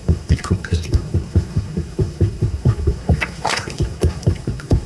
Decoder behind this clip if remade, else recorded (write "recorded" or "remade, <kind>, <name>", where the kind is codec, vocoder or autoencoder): remade, codec, SNAC